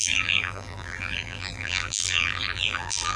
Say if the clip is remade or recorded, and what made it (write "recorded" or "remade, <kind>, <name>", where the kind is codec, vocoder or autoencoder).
remade, vocoder, BigVGAN v2